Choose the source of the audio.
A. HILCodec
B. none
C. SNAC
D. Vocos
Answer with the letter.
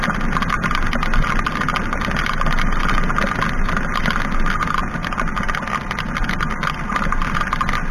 B